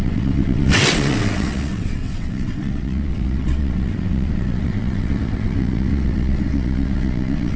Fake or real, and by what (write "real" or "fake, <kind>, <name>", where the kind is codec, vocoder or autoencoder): fake, vocoder, WaveNeXt